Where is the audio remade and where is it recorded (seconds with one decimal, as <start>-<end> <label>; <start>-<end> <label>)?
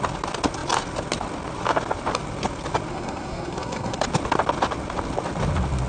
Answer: 0.0-2.9 recorded; 2.9-4.0 remade; 4.0-5.9 recorded